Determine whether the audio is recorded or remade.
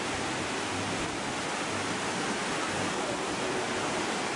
recorded